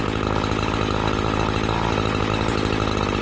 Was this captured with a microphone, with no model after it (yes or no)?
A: yes